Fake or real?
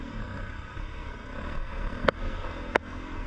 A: fake